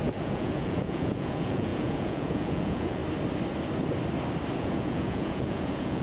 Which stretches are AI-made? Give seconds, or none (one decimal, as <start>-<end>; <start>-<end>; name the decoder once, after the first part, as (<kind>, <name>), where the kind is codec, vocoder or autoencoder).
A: 0.0-3.0 (vocoder, Vocos); 4.6-6.0